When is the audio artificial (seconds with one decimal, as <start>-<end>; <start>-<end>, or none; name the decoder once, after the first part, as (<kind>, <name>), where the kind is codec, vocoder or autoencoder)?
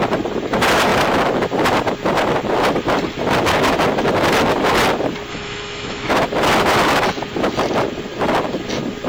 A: 5.3-6.1 (autoencoder, DAC-VAE)